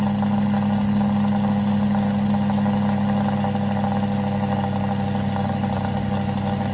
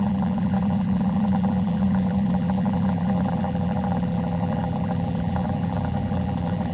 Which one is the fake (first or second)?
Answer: second